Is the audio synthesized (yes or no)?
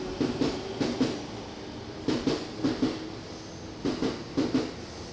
no